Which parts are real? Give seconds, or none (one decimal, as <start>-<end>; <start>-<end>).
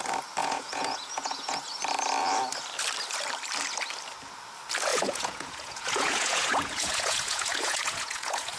0.0-0.4; 1.6-4.9